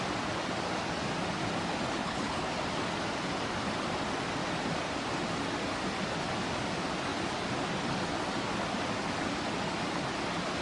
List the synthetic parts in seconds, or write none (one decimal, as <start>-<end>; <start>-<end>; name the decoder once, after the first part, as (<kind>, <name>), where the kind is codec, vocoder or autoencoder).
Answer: 2.0-2.5 (codec, HILCodec)

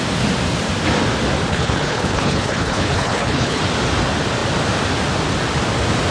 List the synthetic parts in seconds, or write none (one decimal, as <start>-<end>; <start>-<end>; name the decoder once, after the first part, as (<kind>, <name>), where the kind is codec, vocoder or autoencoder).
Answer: 1.5-3.6 (codec, HILCodec)